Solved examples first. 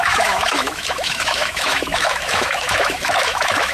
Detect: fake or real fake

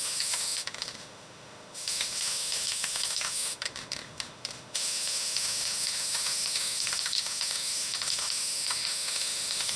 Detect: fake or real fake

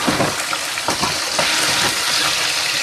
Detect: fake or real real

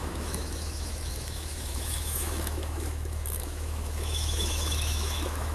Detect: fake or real fake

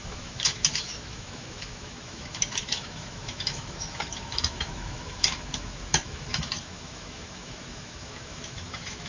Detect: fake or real fake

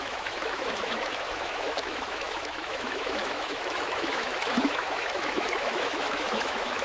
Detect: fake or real fake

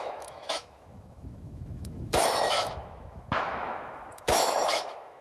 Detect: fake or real fake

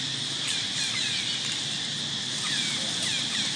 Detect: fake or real real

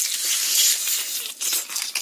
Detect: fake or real real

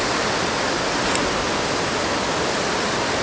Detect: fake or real real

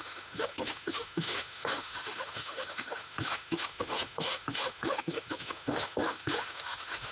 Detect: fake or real fake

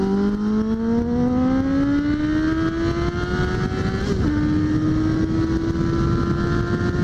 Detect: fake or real real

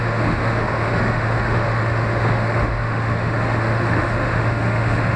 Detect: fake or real fake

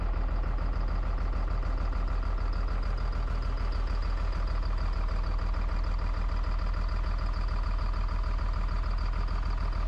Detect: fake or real real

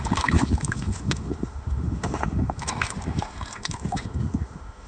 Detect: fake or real fake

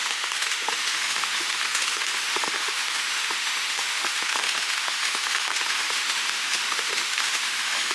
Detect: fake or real fake